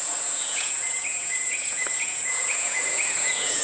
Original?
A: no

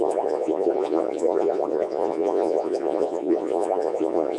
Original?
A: no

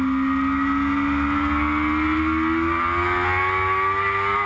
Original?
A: yes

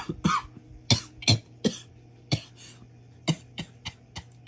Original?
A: yes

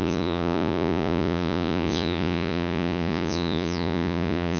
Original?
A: no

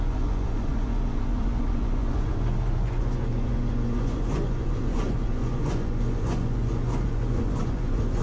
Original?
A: no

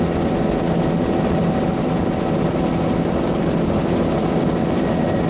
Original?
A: yes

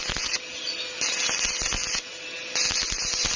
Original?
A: yes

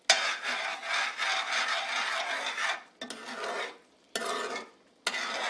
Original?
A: yes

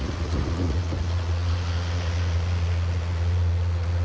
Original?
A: no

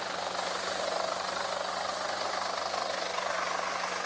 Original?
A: yes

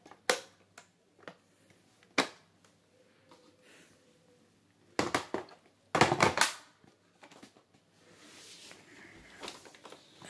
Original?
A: yes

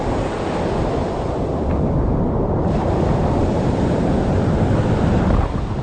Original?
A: yes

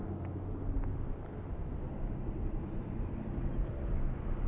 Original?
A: yes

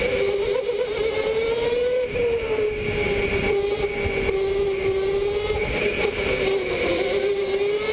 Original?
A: yes